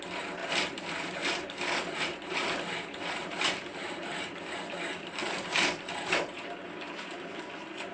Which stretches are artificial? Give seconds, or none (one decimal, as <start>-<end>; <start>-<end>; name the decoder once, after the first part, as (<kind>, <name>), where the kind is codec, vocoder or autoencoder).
0.4-4.5 (vocoder, BigVGAN v2); 5.2-7.5